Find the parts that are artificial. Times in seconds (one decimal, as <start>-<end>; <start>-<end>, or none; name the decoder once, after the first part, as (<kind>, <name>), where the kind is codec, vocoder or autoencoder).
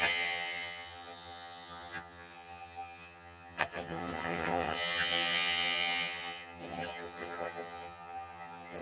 0.0-8.8 (vocoder, HiFi-GAN)